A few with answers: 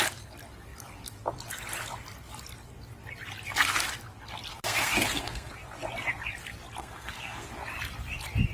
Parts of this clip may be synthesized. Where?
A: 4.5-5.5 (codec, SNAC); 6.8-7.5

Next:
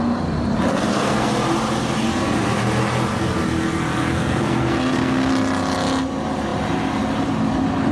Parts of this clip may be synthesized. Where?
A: 0.7-1.3 (codec, SNAC); 4.0-5.3

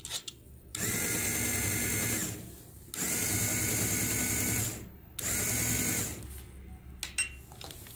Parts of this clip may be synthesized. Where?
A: none